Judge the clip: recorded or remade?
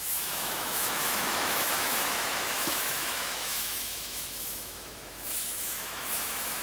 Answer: remade